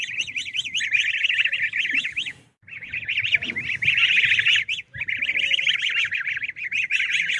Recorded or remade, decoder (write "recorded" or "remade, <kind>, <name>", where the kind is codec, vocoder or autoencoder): remade, vocoder, BigVGAN v2